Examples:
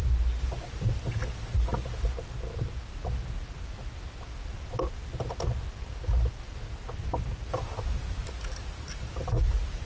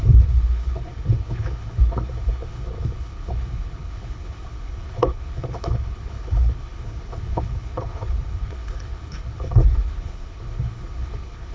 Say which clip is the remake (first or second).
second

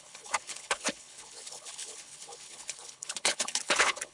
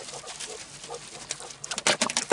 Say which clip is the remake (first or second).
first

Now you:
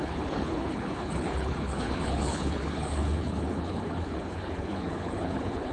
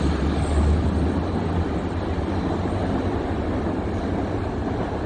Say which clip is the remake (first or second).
first